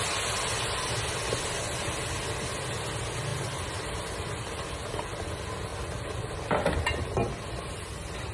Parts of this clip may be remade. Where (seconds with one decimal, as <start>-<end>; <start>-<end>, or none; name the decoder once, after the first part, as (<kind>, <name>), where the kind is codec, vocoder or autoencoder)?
3.3-5.3 (vocoder, BigVGAN v2); 5.7-7.6